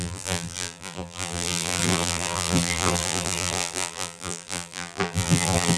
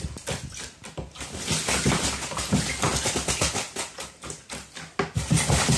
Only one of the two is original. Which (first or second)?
second